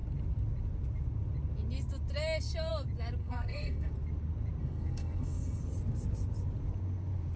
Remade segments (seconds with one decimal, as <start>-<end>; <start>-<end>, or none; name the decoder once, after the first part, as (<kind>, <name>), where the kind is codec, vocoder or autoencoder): 3.2-3.9 (codec, SNAC); 4.6-5.6